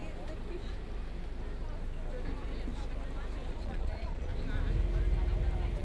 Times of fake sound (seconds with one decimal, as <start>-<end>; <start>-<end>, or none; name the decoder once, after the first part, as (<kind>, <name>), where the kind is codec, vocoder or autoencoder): 3.5-4.3 (vocoder, Vocos)